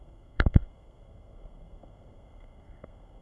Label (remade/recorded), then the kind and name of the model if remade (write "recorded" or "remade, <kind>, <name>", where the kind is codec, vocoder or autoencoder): remade, codec, SNAC